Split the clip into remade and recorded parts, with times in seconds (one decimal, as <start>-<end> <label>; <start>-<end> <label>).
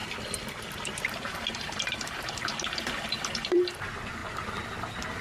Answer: 0.0-0.6 recorded; 0.6-4.2 remade; 4.2-5.2 recorded